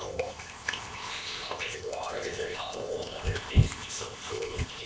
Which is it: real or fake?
fake